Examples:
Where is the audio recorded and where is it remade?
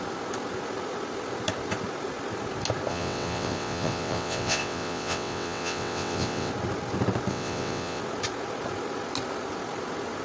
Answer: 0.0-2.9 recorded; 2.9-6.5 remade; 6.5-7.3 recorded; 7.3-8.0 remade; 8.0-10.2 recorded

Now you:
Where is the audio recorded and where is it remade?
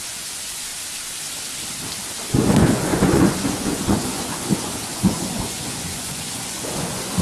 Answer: 0.0-0.7 remade; 0.7-2.3 recorded; 2.3-7.2 remade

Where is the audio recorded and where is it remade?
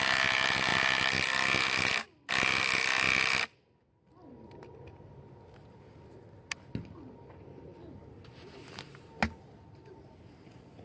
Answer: 0.0-10.8 recorded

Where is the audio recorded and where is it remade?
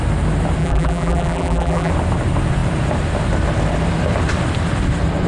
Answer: 0.0-0.6 recorded; 0.6-1.9 remade; 1.9-5.3 recorded